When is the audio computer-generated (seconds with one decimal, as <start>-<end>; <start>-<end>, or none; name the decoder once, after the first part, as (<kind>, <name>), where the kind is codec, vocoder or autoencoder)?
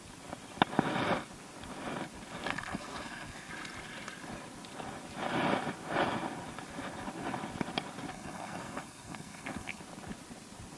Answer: 2.5-3.5 (codec, SNAC); 8.1-9.8